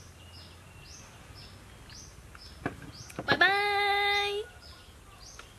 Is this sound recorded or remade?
recorded